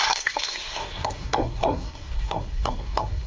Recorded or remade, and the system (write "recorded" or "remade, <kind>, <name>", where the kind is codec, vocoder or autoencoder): remade, codec, SNAC